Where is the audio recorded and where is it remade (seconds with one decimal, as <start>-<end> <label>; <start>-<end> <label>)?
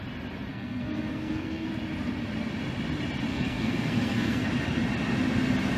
0.0-0.5 recorded; 0.5-1.7 remade; 1.7-3.3 recorded; 3.3-4.5 remade; 4.5-5.8 recorded